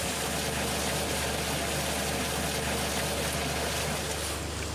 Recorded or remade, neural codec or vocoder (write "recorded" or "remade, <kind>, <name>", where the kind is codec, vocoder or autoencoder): recorded